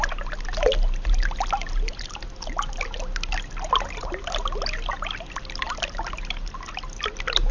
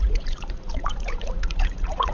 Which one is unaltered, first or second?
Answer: first